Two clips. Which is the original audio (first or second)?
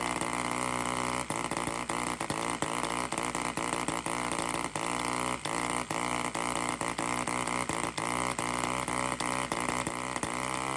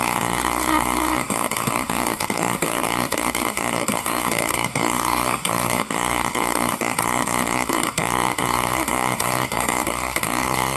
first